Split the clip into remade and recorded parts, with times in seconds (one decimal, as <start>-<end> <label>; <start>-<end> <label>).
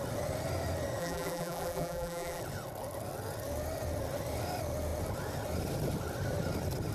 0.0-1.0 recorded; 1.0-2.4 remade; 2.4-6.9 recorded